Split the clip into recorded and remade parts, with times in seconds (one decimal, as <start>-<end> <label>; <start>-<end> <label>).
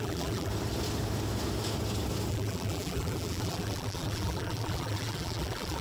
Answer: 0.0-0.5 remade; 0.5-2.3 recorded; 2.3-5.8 remade